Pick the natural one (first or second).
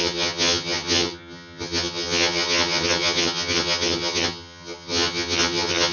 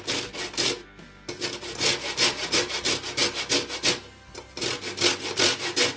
second